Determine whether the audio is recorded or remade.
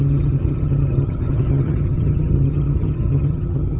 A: remade